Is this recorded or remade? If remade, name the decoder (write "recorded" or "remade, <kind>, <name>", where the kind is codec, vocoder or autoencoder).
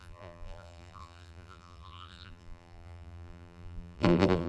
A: remade, vocoder, BigVGAN v2